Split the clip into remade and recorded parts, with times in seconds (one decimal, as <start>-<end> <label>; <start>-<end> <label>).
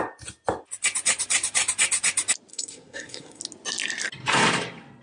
0.0-2.5 recorded; 2.5-3.4 remade; 3.4-5.0 recorded